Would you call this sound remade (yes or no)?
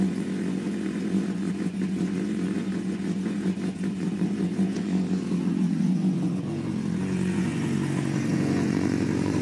yes